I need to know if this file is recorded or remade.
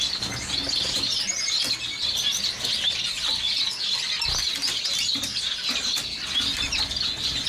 recorded